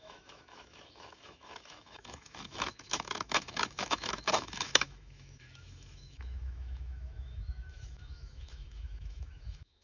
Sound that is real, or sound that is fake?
fake